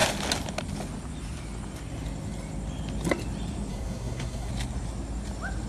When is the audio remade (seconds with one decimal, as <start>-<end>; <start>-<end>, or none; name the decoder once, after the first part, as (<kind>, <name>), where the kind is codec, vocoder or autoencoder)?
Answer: 3.7-4.5 (codec, SNAC)